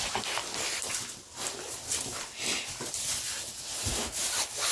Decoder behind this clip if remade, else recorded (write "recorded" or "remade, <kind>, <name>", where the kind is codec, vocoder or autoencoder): recorded